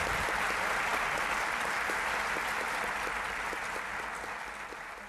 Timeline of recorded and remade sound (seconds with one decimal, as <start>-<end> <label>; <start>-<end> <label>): 0.0-5.1 recorded